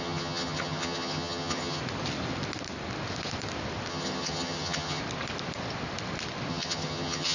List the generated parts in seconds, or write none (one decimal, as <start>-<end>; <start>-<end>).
0.0-1.8; 3.9-5.0; 6.5-7.3